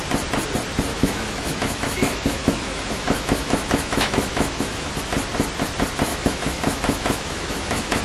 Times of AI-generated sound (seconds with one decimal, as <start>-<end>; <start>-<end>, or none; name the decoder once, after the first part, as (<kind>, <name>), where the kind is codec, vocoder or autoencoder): 0.9-4.9 (autoencoder, DAC-VAE); 6.1-8.0

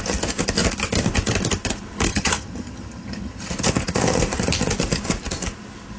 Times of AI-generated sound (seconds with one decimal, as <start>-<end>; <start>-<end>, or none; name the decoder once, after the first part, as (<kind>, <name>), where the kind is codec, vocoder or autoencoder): 2.1-3.5 (vocoder, HiFi-GAN)

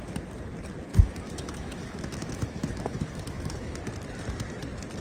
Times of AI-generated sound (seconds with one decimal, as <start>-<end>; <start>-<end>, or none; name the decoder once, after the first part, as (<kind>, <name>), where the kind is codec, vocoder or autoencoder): 0.9-3.8 (autoencoder, DAC-VAE)

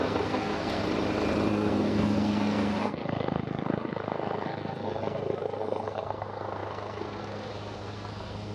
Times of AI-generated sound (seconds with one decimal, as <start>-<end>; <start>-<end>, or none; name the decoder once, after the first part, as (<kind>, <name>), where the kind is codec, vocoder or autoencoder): 0.0-0.8 (codec, SNAC); 1.5-8.5

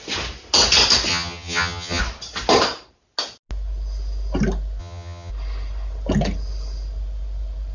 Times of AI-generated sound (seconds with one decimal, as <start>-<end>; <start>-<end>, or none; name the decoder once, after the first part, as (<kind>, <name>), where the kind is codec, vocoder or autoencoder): 1.1-2.0 (vocoder, HiFi-GAN); 4.8-5.3